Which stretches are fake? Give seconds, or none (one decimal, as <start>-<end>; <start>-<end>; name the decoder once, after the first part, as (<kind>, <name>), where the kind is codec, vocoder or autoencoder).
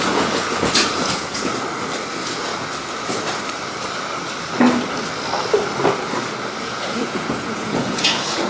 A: 0.0-1.5 (vocoder, Vocos); 2.1-2.5; 6.6-8.5